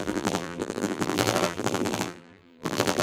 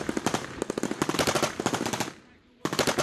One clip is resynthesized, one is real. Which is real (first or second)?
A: second